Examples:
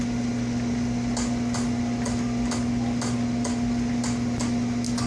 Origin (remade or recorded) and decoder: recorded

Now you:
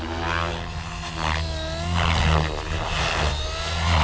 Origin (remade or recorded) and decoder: recorded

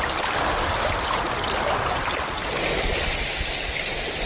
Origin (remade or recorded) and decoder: recorded